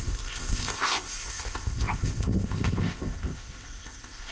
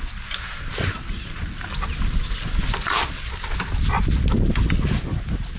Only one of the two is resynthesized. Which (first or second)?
first